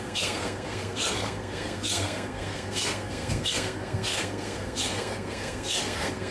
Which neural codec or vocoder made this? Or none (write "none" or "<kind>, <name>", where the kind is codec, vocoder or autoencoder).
codec, SNAC